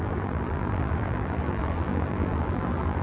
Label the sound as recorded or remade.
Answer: remade